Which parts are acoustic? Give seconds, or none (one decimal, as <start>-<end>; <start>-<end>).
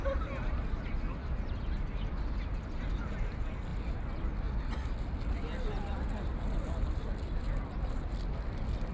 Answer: 0.0-8.9